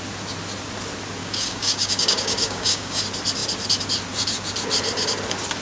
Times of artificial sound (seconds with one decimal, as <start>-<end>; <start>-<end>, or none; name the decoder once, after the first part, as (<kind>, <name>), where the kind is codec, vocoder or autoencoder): 1.2-3.0 (codec, DAC)